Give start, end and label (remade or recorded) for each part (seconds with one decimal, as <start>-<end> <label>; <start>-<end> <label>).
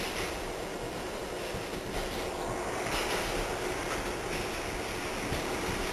0.0-5.9 recorded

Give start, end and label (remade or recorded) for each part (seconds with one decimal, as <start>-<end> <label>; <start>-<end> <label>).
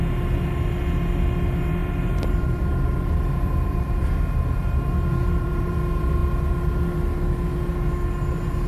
0.0-1.8 recorded; 1.8-5.7 remade; 5.7-8.7 recorded